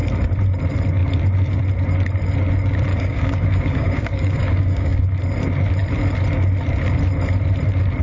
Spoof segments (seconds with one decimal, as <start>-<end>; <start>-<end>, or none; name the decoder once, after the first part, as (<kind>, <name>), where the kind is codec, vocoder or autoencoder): 2.9-5.0 (codec, DAC)